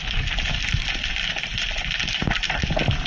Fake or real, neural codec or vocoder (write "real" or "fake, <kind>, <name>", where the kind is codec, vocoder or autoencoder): fake, vocoder, BigVGAN v2